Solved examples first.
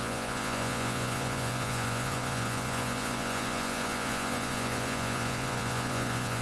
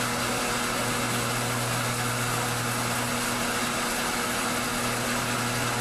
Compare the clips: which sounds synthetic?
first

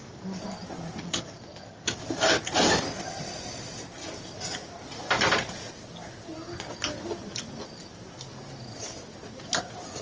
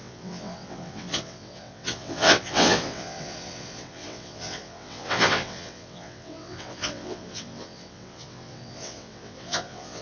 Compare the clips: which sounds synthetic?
second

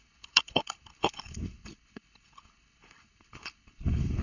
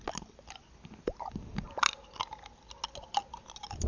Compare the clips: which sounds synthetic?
first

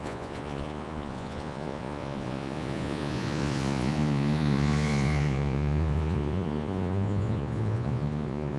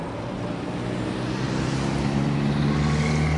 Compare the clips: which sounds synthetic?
first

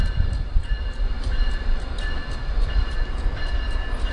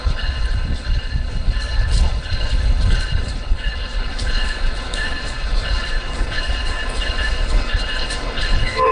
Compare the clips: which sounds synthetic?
second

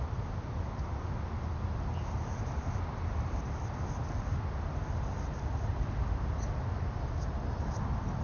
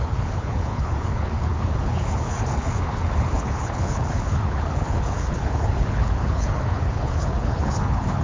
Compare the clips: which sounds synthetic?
second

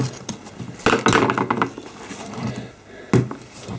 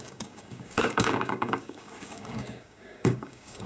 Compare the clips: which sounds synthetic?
second